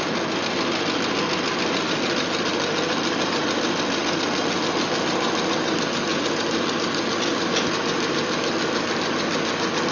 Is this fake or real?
real